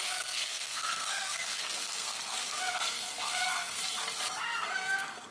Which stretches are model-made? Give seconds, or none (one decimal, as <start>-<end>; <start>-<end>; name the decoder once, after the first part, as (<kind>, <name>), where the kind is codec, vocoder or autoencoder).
0.0-3.8 (codec, SNAC); 4.4-5.3